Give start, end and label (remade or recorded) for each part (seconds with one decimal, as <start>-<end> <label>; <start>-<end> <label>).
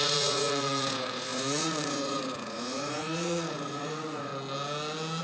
0.0-4.3 remade; 4.3-5.2 recorded